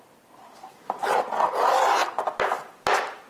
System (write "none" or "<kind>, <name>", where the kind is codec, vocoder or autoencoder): none